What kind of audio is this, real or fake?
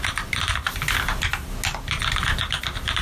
real